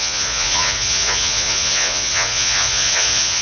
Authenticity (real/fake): fake